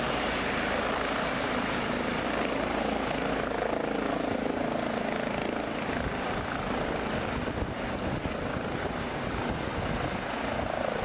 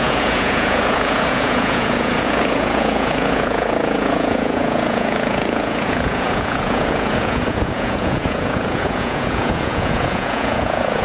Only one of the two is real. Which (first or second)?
first